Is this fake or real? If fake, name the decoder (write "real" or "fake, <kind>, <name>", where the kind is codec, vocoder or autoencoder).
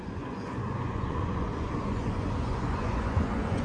fake, vocoder, Vocos